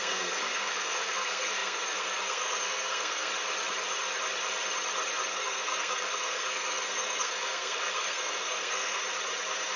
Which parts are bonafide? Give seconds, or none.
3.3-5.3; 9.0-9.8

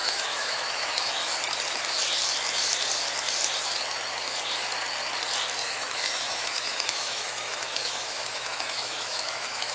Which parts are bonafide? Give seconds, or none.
1.3-5.6

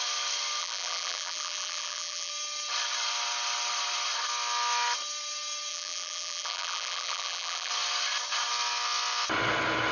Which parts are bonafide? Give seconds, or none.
0.0-0.6; 2.3-5.7; 7.7-9.9